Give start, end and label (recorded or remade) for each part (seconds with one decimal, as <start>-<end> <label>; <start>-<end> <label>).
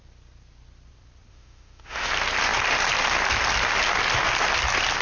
0.0-1.3 recorded; 1.3-2.1 remade; 2.1-5.0 recorded